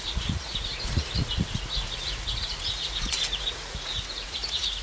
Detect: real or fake fake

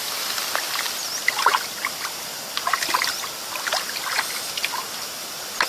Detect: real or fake real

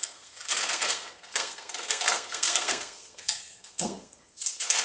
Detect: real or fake fake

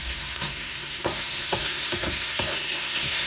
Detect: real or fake fake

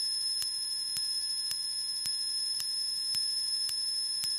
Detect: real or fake fake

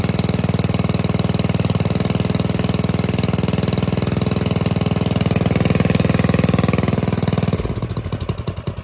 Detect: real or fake real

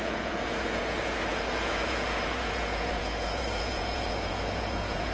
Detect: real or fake fake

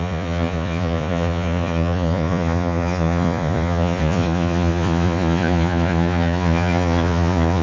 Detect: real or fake fake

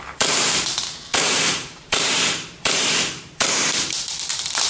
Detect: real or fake fake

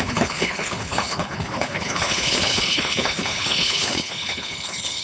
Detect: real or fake fake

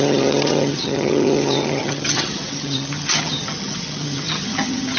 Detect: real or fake fake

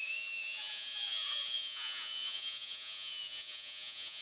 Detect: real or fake fake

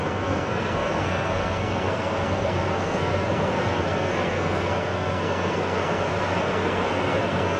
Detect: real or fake fake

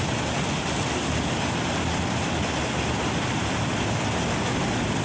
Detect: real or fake real